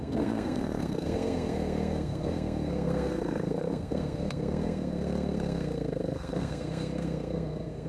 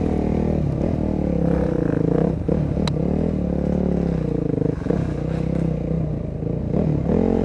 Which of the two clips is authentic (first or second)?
second